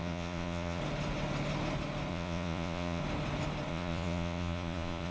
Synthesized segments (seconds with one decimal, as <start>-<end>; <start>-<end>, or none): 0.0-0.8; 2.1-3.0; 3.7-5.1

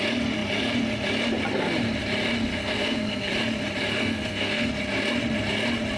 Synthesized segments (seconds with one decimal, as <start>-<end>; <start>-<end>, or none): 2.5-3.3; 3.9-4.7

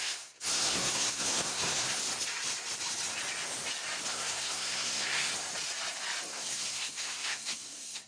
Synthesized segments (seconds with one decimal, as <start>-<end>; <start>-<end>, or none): 0.0-2.0; 4.1-5.3; 6.3-8.1